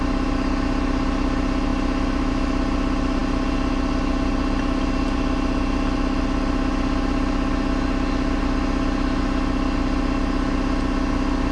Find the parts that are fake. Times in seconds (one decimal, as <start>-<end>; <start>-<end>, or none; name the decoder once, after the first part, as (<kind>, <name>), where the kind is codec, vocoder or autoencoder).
none